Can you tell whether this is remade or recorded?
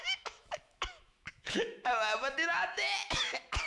remade